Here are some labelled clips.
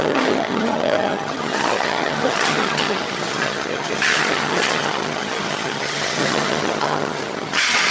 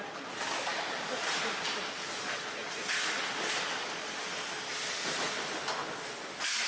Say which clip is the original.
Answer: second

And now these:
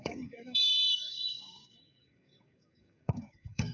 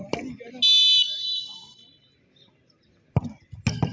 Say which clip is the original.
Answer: second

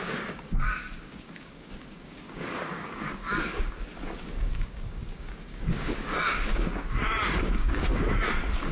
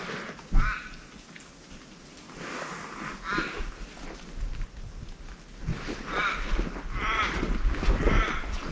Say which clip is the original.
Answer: second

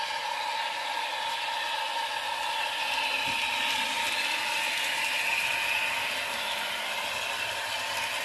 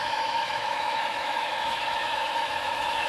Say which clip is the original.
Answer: first